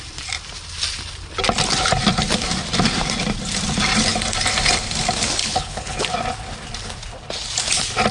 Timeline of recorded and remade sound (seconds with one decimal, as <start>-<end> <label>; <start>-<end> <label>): 0.0-5.4 recorded; 5.4-6.0 remade; 6.0-8.1 recorded